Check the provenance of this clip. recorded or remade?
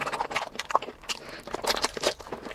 recorded